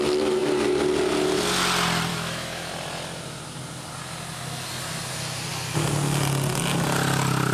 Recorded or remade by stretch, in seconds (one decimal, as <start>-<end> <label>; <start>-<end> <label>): 0.0-2.1 recorded; 2.1-2.7 remade; 2.7-7.5 recorded